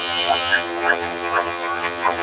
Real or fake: fake